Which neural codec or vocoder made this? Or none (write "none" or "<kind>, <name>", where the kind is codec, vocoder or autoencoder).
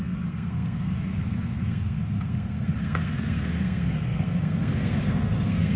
codec, SNAC